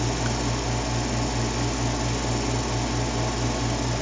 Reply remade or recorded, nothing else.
recorded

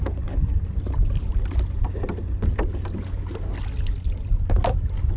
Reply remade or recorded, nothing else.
recorded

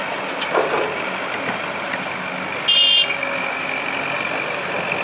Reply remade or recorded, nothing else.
recorded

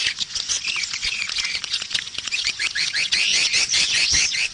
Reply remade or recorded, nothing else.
remade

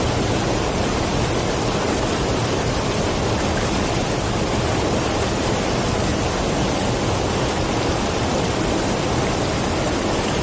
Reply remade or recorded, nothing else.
recorded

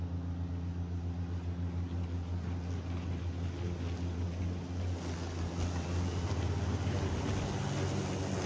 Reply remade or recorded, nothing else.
recorded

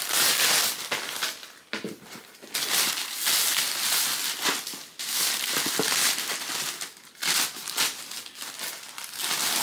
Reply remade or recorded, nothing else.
recorded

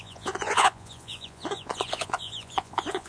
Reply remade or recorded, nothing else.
remade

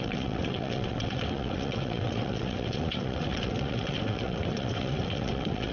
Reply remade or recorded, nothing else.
remade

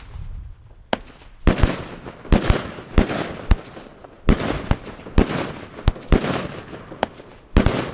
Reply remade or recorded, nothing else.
recorded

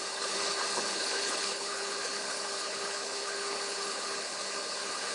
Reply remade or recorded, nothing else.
remade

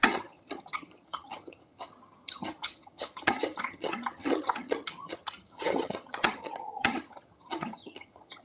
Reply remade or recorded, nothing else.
remade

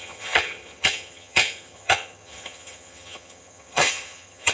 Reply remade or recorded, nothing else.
remade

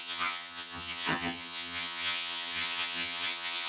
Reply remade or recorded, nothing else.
remade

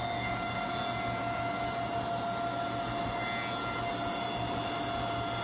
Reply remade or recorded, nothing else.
recorded